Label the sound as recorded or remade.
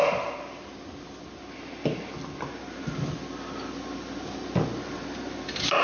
recorded